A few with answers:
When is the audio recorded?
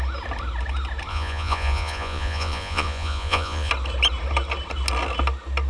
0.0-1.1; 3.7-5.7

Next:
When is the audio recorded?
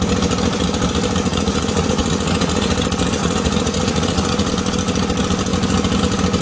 0.0-1.3; 2.7-3.2; 4.5-6.4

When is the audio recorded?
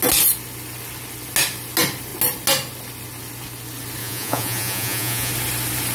0.0-4.0; 5.3-5.9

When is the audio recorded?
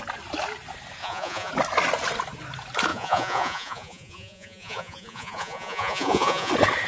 0.0-1.0; 1.5-2.9; 6.5-6.9